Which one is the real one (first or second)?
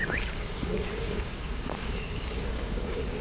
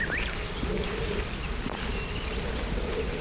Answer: second